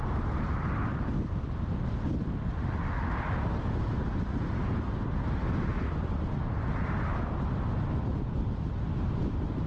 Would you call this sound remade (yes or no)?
no